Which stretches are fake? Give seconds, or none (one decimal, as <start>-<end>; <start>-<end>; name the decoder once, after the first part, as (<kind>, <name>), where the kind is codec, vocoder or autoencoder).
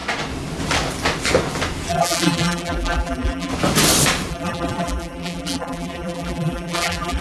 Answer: 1.9-3.5 (vocoder, BigVGAN v2); 4.3-7.2